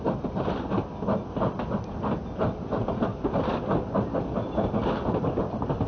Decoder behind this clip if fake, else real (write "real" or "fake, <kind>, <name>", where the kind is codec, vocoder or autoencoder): real